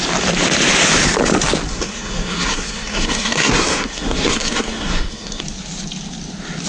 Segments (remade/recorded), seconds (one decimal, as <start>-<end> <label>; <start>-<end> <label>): 0.0-1.7 recorded; 1.7-5.4 remade; 5.4-6.7 recorded